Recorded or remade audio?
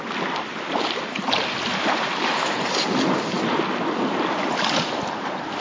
recorded